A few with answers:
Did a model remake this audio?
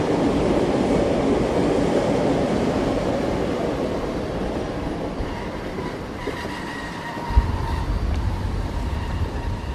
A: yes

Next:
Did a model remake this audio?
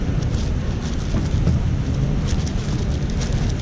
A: no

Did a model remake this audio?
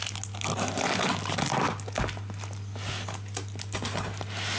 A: no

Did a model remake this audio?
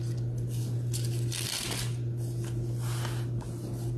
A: no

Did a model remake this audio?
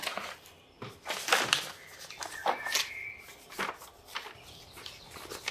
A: no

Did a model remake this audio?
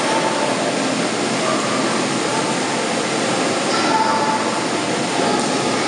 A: no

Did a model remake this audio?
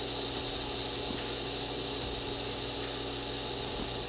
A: no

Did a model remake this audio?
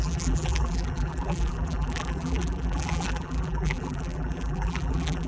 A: yes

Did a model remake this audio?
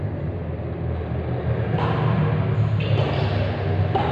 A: no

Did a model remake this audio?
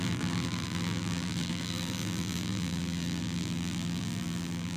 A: yes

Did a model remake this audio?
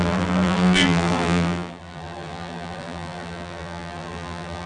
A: yes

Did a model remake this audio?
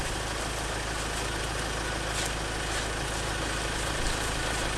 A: no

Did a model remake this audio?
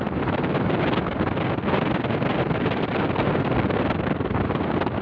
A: no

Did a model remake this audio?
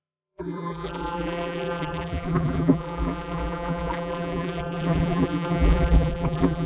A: yes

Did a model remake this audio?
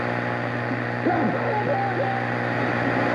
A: no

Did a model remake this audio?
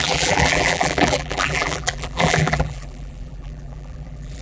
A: yes